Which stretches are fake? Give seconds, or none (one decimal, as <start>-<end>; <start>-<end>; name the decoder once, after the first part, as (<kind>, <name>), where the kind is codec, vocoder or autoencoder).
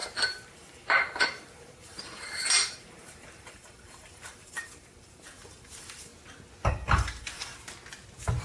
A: 0.5-6.1 (vocoder, BigVGAN v2); 6.7-7.5